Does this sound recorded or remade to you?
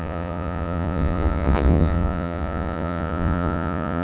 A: remade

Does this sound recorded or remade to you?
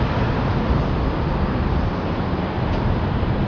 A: recorded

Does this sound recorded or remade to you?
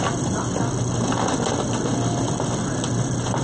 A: recorded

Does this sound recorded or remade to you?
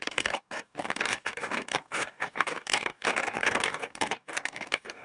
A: remade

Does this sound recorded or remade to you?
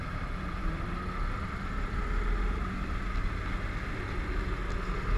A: recorded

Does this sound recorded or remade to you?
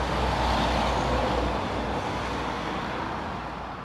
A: recorded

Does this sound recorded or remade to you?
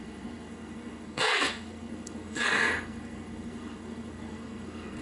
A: remade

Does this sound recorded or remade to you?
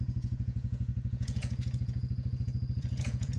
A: remade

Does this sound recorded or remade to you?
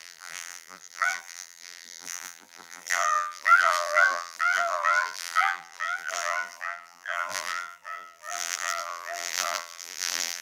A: remade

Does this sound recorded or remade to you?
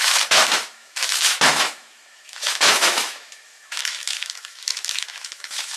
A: remade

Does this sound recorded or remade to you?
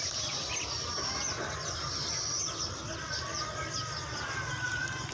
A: recorded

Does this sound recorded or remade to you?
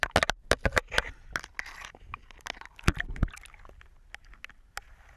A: recorded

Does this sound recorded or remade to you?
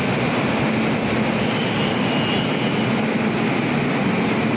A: recorded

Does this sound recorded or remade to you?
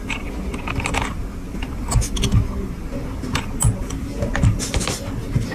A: recorded